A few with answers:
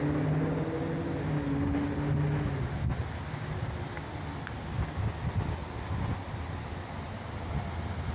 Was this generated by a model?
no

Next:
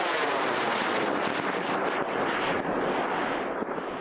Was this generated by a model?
no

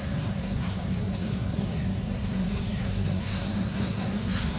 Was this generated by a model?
yes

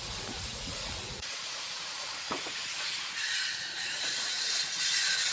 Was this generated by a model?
yes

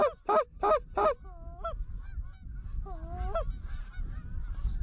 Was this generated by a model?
no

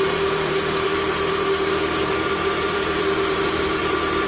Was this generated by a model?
yes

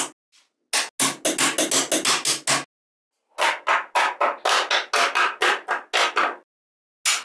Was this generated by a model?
no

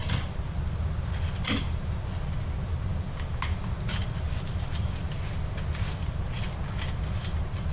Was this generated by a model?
no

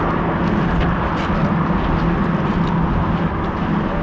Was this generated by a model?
no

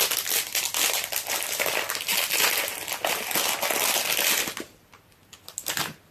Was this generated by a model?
no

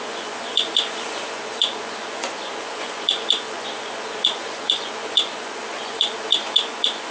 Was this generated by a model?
yes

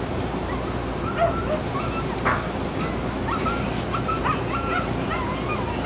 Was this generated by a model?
no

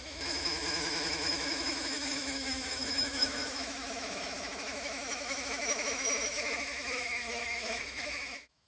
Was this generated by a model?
yes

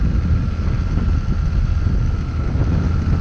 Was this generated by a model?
no